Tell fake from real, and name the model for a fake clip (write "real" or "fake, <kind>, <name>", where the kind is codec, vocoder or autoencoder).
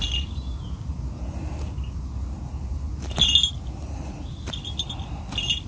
real